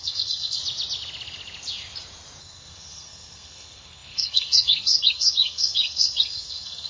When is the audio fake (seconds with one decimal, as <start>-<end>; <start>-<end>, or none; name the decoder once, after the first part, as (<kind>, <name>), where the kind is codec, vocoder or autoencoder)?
0.0-0.6 (codec, SNAC); 2.4-6.9